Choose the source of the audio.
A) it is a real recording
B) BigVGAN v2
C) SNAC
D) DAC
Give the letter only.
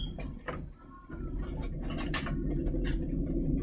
A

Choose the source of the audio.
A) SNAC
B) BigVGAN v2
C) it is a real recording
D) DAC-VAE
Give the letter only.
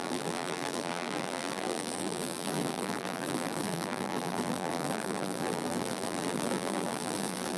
B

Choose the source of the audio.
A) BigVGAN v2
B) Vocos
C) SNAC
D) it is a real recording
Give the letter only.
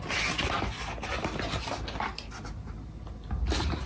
D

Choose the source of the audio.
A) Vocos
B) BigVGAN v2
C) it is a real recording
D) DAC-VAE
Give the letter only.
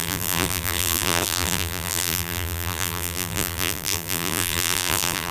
B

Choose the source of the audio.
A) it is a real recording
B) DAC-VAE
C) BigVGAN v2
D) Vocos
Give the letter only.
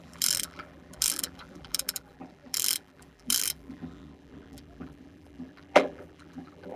C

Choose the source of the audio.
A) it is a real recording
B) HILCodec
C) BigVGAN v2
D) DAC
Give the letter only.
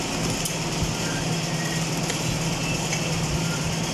A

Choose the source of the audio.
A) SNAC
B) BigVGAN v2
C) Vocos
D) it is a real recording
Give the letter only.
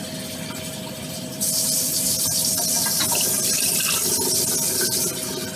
D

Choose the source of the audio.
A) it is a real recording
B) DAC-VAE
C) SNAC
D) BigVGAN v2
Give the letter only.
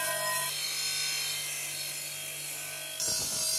A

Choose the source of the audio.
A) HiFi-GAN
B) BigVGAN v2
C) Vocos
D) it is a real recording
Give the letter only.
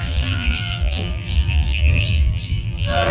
B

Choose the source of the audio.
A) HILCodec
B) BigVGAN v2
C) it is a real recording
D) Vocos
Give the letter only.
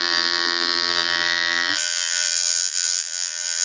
B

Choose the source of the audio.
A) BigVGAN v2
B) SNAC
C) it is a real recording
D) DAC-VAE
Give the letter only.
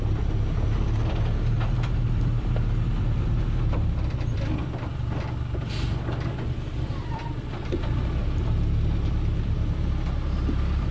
A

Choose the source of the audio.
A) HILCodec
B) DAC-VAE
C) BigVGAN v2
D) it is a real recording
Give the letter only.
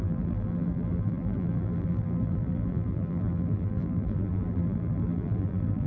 C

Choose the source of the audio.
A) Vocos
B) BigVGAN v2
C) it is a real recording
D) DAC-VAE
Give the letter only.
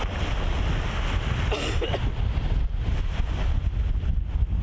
C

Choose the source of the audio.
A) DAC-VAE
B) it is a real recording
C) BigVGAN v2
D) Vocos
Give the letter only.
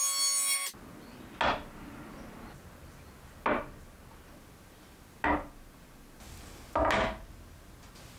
B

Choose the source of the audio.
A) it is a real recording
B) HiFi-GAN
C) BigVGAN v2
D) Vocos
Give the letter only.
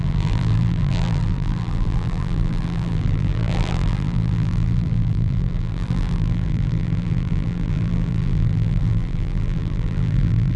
C